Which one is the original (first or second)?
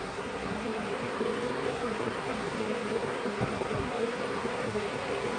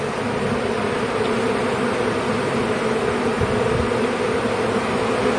second